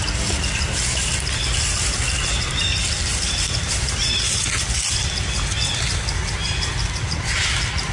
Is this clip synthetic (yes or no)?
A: no